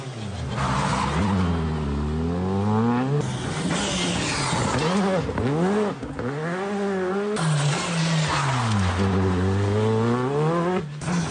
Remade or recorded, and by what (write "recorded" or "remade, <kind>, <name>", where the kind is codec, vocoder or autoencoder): recorded